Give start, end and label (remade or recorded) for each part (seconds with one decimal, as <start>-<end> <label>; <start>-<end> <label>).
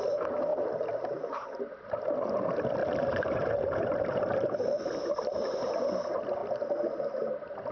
0.0-0.5 recorded; 0.5-1.6 remade; 1.6-2.8 recorded; 2.8-5.8 remade; 5.8-6.4 recorded; 6.4-7.0 remade; 7.0-7.7 recorded